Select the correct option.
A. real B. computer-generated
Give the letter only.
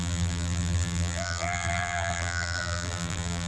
B